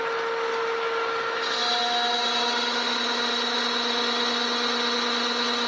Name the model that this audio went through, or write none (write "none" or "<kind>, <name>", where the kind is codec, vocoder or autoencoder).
none